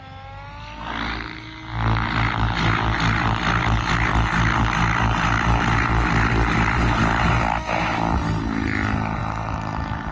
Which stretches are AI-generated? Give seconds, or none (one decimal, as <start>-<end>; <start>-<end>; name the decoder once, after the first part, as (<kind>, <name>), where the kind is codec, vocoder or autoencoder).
9.2-10.1 (vocoder, BigVGAN v2)